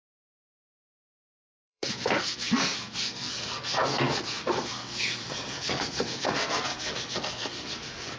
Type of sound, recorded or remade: remade